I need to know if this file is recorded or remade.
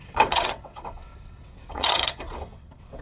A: remade